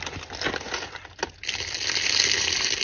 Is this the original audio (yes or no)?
yes